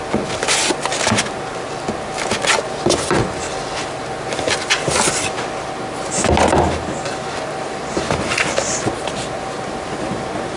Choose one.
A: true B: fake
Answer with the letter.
A